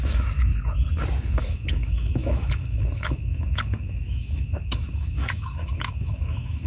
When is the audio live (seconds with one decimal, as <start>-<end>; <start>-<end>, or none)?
0.5-1.4